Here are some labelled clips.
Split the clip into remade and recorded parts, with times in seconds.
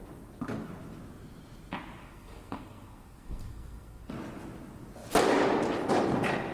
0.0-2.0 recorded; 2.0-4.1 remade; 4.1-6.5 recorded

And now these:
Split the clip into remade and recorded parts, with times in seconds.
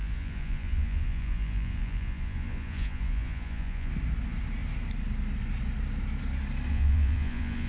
0.0-3.9 remade; 3.9-6.7 recorded; 6.7-7.7 remade